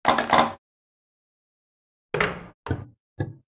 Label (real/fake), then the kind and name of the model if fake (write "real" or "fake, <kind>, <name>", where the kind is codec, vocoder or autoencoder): real